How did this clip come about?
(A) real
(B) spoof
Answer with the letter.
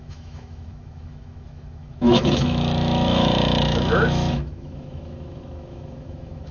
B